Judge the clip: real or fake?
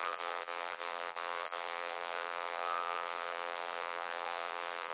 fake